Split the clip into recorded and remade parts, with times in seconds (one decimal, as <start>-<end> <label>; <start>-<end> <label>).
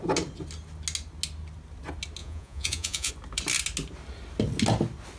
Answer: 0.0-2.2 recorded; 2.2-3.1 remade; 3.1-5.2 recorded